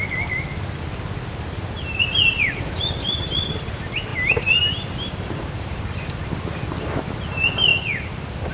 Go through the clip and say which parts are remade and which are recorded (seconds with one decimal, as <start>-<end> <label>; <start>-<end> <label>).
0.0-8.5 recorded